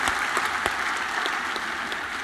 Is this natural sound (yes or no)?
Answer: yes